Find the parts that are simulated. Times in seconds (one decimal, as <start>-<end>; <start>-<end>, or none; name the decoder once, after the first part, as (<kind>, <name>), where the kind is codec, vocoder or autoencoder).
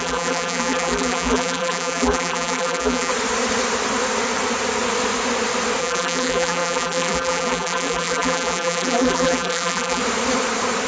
0.0-3.1 (vocoder, BigVGAN v2); 5.8-10.0